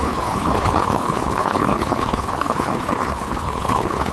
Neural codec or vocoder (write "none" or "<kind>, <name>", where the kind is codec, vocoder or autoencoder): codec, HILCodec